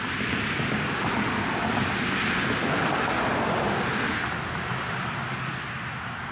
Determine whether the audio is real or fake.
real